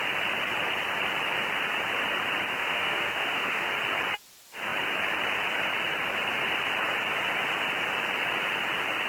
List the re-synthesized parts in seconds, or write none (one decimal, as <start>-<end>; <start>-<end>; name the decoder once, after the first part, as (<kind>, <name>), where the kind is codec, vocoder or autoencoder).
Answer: 2.5-3.7 (autoencoder, DAC-VAE)